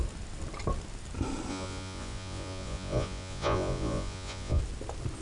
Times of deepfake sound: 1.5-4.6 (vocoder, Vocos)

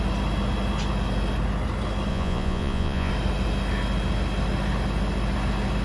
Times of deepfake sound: 2.1-3.1 (vocoder, Vocos)

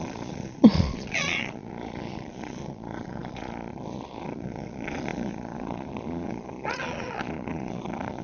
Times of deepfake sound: 0.0-8.2 (vocoder, Vocos)

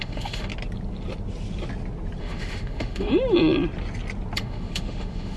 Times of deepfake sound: 0.0-0.5 (autoencoder, DAC-VAE); 2.2-3.1; 4.4-5.4

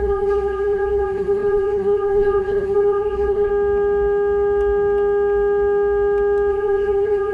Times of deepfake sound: 0.0-3.5 (codec, SNAC); 6.5-7.3

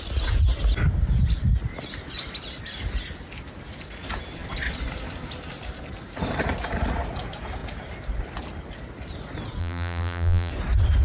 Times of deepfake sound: 9.6-10.5 (vocoder, BigVGAN v2)

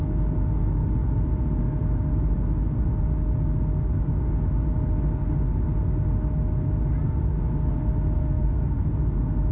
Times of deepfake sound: 8.2-8.9 (codec, SNAC)

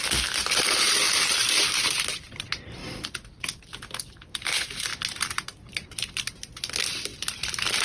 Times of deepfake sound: none